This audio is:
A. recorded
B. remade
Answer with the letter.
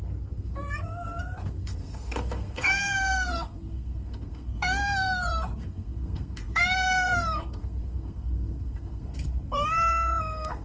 B